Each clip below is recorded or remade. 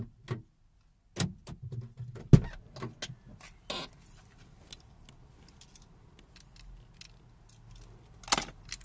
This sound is recorded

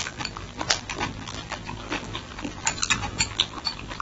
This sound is remade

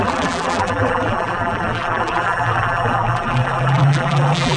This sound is remade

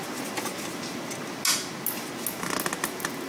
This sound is recorded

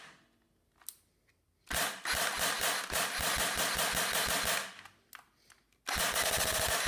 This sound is recorded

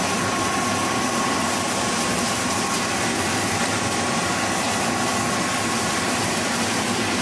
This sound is remade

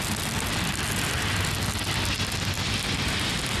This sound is recorded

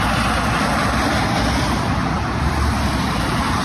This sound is remade